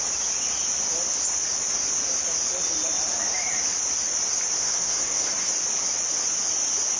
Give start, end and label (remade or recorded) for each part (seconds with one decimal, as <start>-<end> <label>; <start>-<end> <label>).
0.0-4.6 recorded; 4.6-5.5 remade; 5.5-7.0 recorded